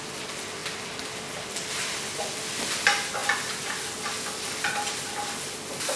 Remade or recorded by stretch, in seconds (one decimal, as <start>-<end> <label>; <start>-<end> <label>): 0.0-6.0 recorded